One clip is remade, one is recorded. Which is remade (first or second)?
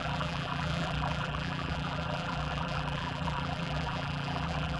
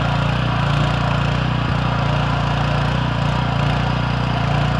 first